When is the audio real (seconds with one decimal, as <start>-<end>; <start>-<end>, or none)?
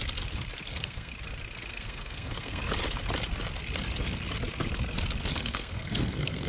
0.0-0.7; 1.1-1.7; 2.6-5.3